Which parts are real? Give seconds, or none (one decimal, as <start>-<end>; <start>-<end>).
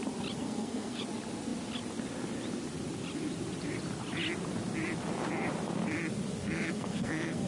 0.0-0.4; 1.0-6.4